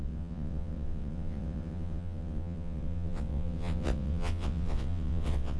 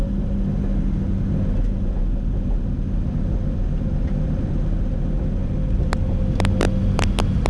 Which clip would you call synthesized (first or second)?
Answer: first